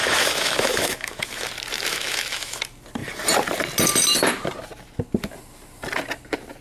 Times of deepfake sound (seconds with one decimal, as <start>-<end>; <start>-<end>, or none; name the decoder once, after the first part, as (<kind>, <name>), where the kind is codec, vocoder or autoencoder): 0.0-1.5 (autoencoder, DAC-VAE); 1.9-2.6